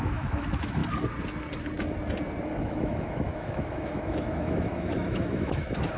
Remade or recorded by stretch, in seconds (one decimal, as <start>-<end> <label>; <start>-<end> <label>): 0.0-0.8 remade; 0.8-2.4 recorded; 2.4-6.0 remade